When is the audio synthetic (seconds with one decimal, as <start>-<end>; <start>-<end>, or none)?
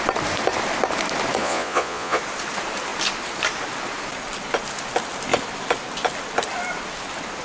1.4-2.2